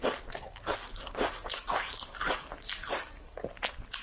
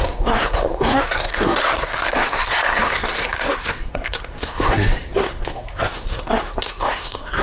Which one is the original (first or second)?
first